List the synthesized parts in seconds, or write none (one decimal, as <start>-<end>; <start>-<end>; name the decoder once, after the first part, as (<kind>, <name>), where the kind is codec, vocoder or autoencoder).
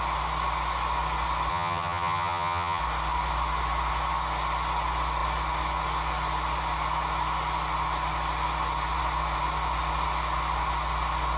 1.5-2.8 (vocoder, HiFi-GAN)